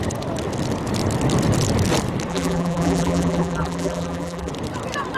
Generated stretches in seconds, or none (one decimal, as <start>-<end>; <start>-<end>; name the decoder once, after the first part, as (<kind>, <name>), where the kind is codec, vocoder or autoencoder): 2.3-4.5 (vocoder, BigVGAN v2)

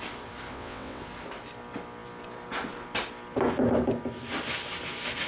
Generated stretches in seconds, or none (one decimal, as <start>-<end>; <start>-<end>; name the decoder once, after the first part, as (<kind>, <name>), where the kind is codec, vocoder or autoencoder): 0.5-1.0 (vocoder, WaveNeXt)

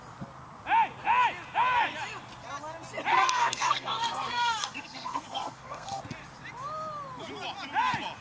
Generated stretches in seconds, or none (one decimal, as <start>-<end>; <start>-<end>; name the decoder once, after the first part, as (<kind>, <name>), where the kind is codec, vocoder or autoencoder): 3.1-6.0 (codec, SNAC)

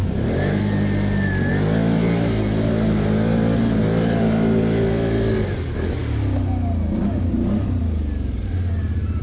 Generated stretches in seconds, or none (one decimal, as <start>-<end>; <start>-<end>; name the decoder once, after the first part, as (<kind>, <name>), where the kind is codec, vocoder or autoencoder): 0.0-0.6 (vocoder, BigVGAN v2)

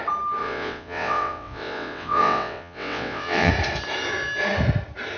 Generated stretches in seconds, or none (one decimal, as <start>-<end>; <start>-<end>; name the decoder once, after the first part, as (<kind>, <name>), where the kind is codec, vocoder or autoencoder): 0.4-3.5 (vocoder, WaveNeXt)